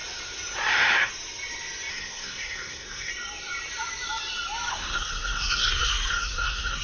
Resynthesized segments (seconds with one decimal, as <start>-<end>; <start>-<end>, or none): 0.7-1.1; 1.9-3.1; 4.7-6.8